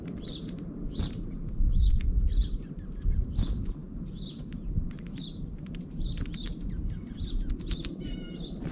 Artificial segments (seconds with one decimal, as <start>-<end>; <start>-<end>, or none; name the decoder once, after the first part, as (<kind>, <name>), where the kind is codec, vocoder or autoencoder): 0.0-8.7 (vocoder, BigVGAN v2)